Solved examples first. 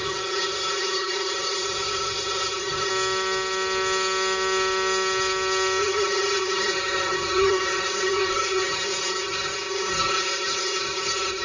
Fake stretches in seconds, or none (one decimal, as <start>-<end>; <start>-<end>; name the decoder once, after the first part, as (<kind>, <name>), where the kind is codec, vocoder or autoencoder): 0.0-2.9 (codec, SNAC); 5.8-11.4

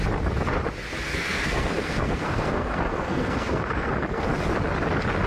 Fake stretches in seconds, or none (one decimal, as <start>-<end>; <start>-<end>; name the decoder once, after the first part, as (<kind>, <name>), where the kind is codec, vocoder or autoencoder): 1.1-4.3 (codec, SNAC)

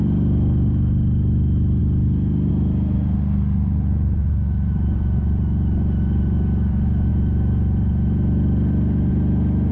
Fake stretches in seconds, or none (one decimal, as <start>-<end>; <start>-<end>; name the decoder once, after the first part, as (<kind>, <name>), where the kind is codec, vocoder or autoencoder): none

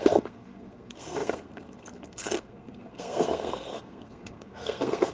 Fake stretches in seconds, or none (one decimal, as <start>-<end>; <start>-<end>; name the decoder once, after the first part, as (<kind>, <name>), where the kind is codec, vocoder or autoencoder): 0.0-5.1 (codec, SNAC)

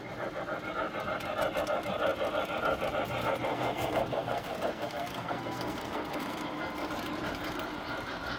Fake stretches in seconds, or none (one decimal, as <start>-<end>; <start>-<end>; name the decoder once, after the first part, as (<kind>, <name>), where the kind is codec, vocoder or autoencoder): 3.5-6.9 (codec, SNAC)